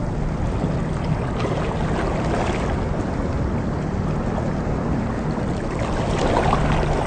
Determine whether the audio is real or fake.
real